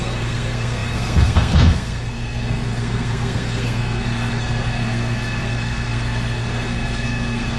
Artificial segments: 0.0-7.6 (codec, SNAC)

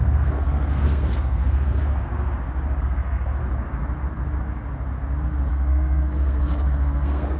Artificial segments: 0.0-2.1 (codec, SNAC); 2.8-3.4; 5.5-7.4

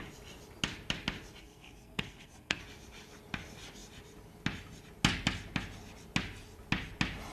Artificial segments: 1.4-2.6 (codec, SNAC)